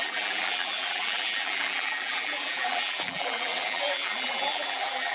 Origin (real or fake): fake